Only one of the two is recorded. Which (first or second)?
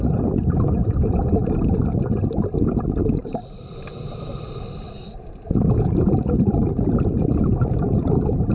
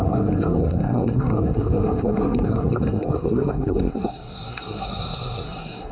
first